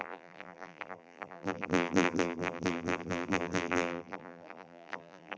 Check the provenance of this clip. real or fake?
fake